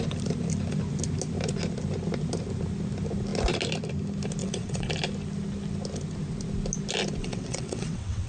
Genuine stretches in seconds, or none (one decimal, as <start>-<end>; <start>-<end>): 0.0-4.4; 4.9-7.2